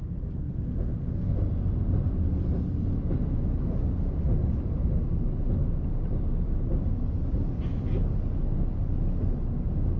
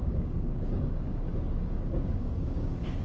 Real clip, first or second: first